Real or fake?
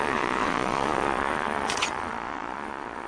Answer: fake